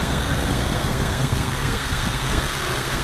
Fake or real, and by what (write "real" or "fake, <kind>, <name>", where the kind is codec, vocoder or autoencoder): fake, codec, SNAC